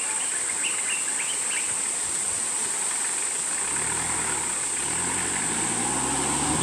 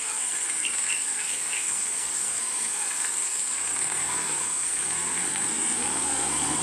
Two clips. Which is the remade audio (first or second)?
second